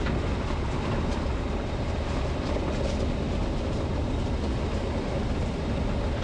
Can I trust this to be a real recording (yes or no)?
yes